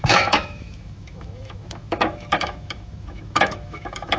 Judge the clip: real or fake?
fake